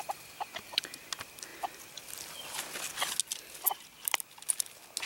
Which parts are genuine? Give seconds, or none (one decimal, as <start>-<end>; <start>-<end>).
0.0-5.1